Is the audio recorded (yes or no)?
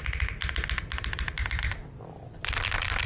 yes